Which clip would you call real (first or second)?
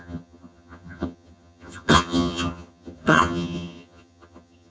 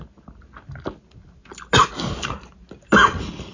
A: second